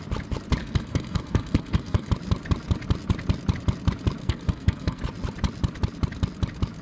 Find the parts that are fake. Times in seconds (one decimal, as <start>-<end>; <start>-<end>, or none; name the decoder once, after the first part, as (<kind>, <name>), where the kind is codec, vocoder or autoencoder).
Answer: 0.6-2.1 (codec, SNAC); 4.2-5.0